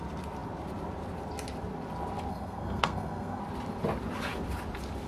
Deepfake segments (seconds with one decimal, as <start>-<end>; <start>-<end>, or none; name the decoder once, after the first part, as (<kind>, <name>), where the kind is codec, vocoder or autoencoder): 2.3-3.4 (codec, SNAC)